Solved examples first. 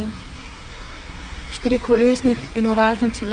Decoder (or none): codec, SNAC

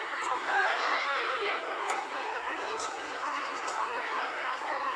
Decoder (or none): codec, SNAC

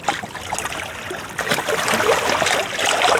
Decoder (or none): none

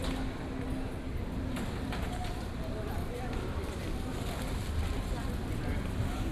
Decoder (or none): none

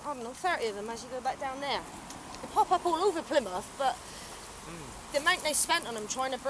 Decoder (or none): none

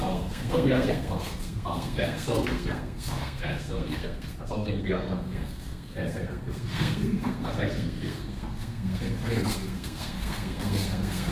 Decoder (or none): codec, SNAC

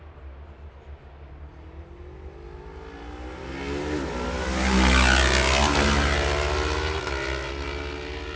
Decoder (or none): none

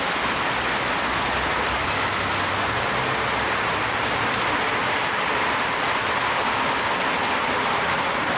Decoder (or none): none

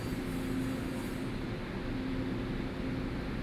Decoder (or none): none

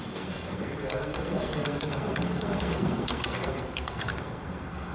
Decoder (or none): codec, SNAC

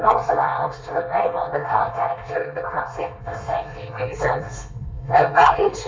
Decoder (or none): codec, SNAC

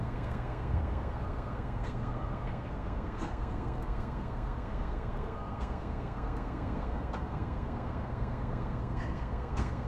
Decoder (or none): codec, SNAC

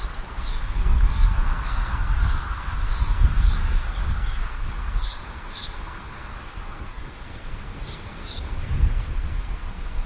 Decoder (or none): codec, SNAC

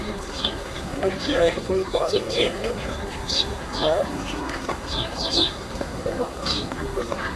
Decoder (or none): codec, SNAC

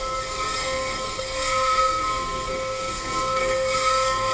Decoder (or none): codec, SNAC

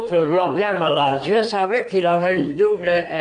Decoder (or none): codec, SNAC